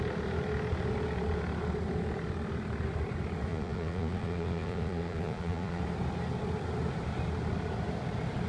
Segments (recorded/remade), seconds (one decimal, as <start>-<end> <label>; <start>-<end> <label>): 0.0-3.5 recorded; 3.5-5.8 remade; 5.8-8.5 recorded